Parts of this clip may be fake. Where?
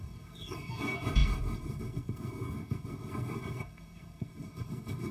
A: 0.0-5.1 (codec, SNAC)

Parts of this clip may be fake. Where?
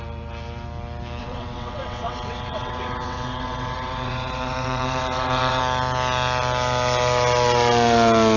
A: 1.2-5.6 (vocoder, WaveNeXt)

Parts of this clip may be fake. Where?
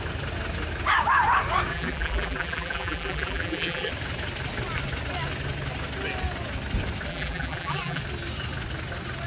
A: 1.7-3.9 (vocoder, BigVGAN v2); 7.1-8.0